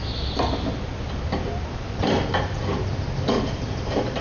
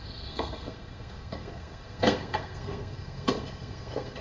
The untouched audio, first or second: first